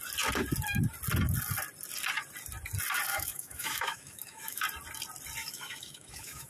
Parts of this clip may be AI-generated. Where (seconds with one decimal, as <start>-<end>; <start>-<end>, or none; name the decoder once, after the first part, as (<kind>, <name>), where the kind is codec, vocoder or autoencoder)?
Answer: 3.1-4.6 (autoencoder, DAC-VAE); 5.4-6.5